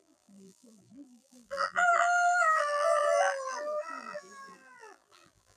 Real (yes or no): no